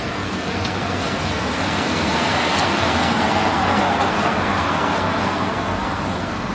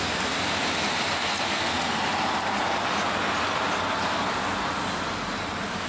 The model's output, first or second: first